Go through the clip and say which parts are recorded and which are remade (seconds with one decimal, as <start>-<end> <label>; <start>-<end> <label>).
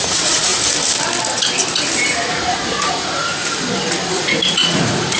0.0-0.5 remade; 0.5-2.3 recorded; 2.3-3.4 remade; 3.4-4.1 recorded; 4.1-5.2 remade